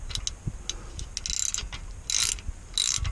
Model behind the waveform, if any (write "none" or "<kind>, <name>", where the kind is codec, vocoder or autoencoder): none